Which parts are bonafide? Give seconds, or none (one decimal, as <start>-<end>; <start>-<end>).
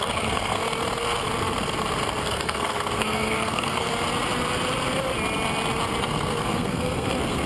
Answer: 0.6-2.2; 3.9-6.0